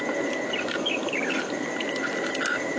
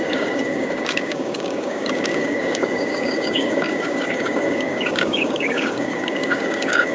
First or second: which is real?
first